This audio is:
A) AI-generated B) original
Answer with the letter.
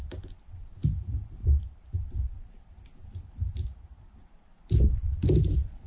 A